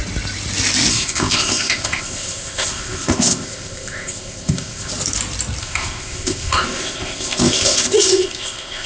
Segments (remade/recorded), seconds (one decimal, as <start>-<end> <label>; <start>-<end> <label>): 0.0-0.9 recorded; 0.9-4.9 remade; 4.9-5.6 recorded; 5.6-8.9 remade